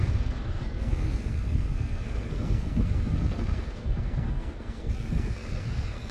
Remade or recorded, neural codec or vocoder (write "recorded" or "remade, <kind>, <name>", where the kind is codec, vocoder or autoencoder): remade, codec, SNAC